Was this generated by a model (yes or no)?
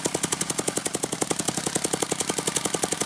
no